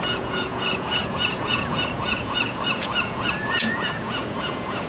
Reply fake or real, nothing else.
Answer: fake